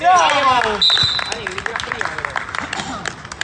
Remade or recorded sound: recorded